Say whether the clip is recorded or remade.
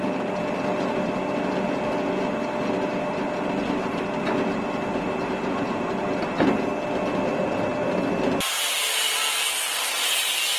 recorded